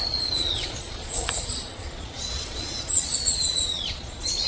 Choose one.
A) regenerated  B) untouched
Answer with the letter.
A